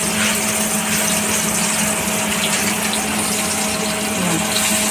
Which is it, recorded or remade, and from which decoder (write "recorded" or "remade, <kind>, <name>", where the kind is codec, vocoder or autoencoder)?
recorded